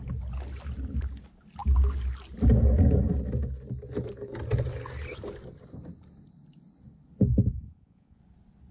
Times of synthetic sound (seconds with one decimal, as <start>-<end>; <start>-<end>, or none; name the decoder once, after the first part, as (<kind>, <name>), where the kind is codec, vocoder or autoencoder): 7.5-8.2 (vocoder, Vocos)